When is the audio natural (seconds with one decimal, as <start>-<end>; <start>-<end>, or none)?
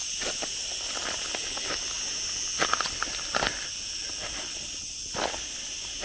0.0-6.0